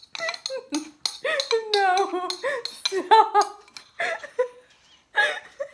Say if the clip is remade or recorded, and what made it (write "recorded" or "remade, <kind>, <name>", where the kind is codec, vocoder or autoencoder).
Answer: recorded